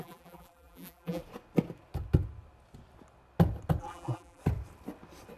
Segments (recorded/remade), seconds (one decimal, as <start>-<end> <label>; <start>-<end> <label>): 0.0-1.2 remade; 1.2-3.8 recorded; 3.8-4.4 remade; 4.4-5.4 recorded